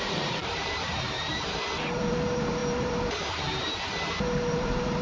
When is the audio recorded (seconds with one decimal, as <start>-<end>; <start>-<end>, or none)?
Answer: none